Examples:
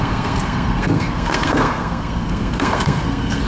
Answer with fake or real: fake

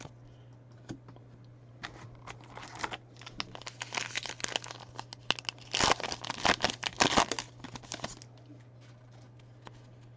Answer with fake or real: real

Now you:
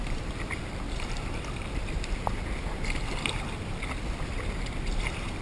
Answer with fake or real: fake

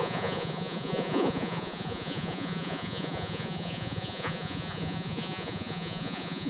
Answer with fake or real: fake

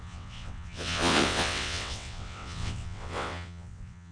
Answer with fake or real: fake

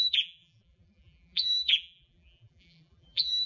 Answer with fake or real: fake